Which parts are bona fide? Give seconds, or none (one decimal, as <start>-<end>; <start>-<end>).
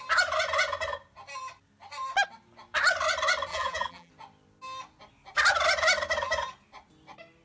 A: 0.0-3.5; 4.1-7.4